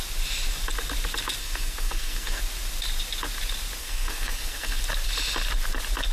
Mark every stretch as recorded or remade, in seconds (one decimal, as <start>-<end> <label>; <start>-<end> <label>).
0.0-1.4 recorded; 1.4-2.4 remade; 2.4-3.8 recorded; 3.8-4.8 remade; 4.8-6.1 recorded